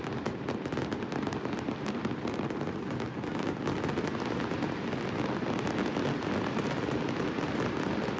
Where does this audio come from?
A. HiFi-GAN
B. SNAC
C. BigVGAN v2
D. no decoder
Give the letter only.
D